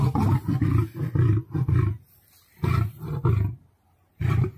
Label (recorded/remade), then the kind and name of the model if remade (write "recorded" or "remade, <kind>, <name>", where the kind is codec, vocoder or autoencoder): recorded